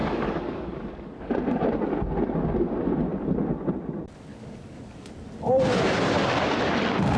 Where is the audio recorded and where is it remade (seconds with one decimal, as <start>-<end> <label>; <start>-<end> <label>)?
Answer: 0.0-1.3 remade; 1.3-4.3 recorded; 4.3-5.1 remade; 5.1-7.2 recorded